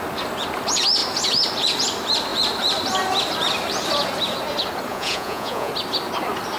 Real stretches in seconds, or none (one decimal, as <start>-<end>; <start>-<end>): 0.0-4.9; 5.7-6.6